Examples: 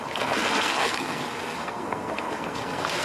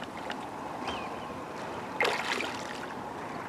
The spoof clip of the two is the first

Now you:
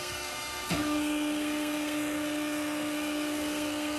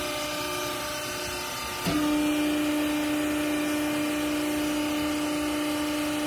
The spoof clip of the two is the first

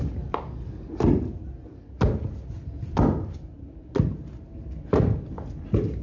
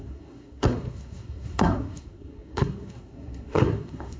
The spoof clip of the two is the second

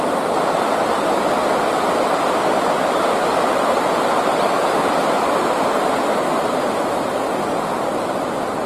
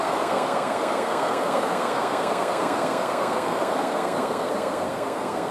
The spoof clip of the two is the second